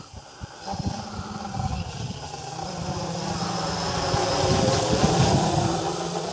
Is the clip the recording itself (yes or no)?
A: yes